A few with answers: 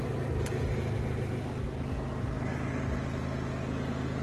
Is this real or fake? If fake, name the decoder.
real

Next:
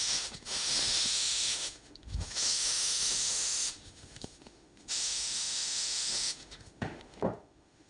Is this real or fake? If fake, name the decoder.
fake, autoencoder, DAC-VAE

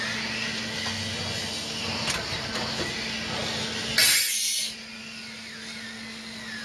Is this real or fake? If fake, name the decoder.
real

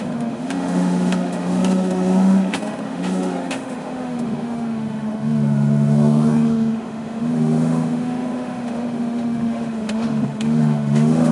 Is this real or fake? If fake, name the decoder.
fake, autoencoder, DAC-VAE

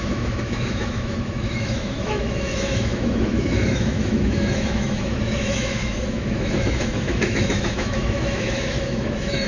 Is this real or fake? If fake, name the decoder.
fake, autoencoder, DAC-VAE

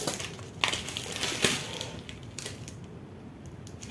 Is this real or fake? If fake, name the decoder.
real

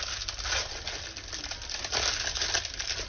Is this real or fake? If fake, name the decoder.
real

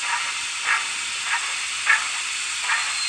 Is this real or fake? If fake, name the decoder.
real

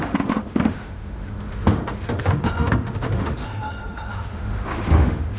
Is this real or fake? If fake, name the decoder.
fake, autoencoder, DAC-VAE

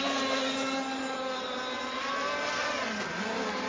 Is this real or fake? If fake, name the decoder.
real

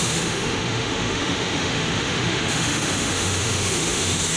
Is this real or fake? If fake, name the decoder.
fake, autoencoder, DAC-VAE